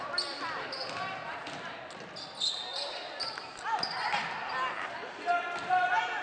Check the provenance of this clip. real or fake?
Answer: real